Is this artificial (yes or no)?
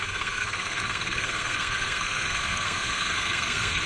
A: yes